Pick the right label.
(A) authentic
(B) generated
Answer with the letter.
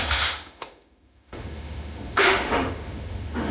B